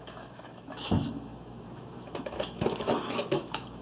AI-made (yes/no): yes